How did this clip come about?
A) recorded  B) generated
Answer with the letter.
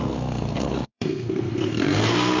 B